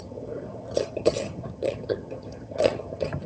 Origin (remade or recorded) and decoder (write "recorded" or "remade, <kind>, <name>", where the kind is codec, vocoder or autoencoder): remade, vocoder, HiFi-GAN